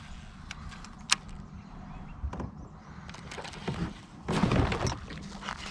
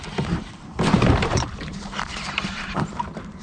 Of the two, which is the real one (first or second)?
first